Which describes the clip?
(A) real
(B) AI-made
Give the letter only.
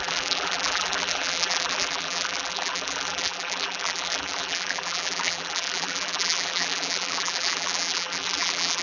B